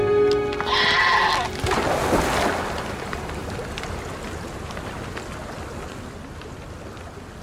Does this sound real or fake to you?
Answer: real